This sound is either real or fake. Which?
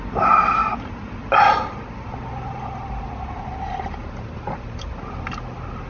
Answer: real